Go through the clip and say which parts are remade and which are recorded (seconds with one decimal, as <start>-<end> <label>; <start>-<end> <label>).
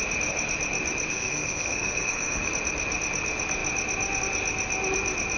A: 0.0-1.1 recorded; 1.1-2.5 remade; 2.5-5.4 recorded